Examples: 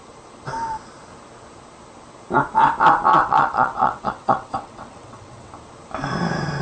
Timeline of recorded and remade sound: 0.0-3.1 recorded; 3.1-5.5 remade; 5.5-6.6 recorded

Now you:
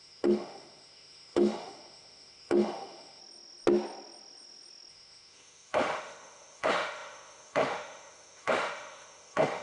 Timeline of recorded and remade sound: 0.0-3.2 remade; 3.2-4.9 recorded; 4.9-9.6 remade

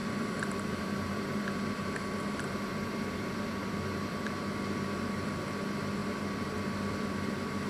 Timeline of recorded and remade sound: 0.0-7.7 remade